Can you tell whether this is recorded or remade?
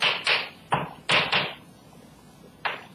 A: recorded